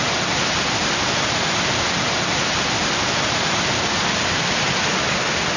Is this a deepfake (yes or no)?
no